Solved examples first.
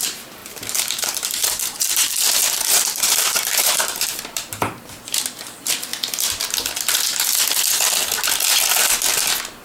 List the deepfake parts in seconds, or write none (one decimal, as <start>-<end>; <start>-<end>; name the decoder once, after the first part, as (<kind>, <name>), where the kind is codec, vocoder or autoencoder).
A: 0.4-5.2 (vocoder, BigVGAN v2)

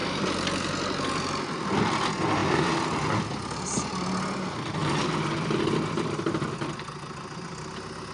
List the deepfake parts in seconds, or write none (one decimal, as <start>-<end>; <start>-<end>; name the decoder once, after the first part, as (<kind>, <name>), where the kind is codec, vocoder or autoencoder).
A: 0.0-2.0 (vocoder, BigVGAN v2); 2.4-3.4

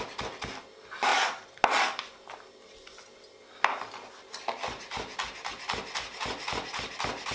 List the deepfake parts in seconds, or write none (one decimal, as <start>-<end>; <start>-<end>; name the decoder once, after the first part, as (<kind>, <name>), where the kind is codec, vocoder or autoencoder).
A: none